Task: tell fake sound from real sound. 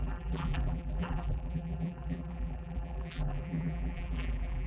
fake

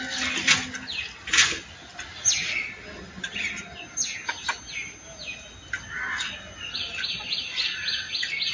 real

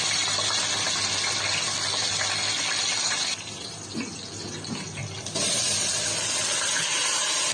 real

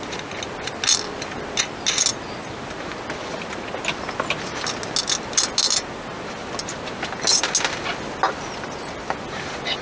real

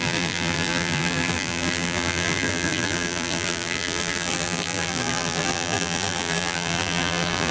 fake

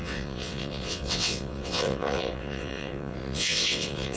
fake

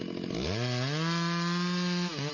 real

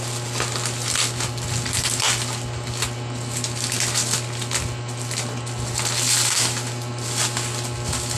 real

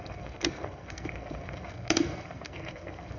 fake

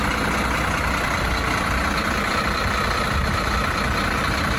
real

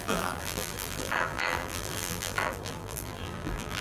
fake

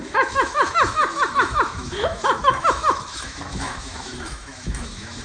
fake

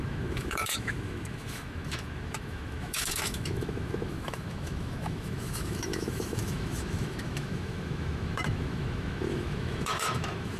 fake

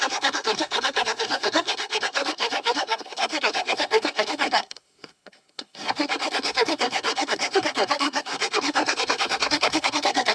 fake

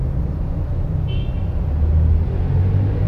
real